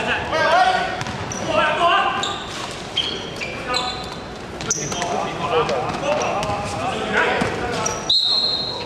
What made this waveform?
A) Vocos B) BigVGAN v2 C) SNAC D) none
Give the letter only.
D